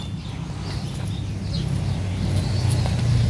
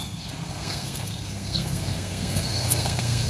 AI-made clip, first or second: second